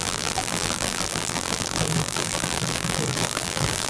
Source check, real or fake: fake